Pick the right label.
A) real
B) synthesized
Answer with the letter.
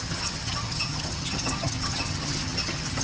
B